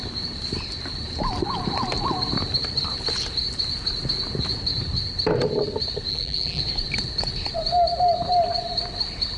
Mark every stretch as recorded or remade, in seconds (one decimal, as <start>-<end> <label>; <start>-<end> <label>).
0.0-6.1 recorded; 6.1-6.6 remade; 6.6-9.4 recorded